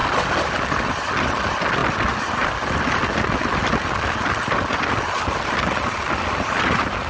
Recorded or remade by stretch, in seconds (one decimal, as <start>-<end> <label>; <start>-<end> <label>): 0.0-7.1 recorded